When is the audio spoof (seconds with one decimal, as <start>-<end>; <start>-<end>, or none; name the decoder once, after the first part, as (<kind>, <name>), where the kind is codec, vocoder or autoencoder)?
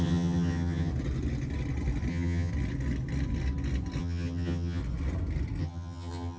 0.0-0.9 (vocoder, HiFi-GAN); 2.1-2.5; 4.0-4.8; 5.6-6.4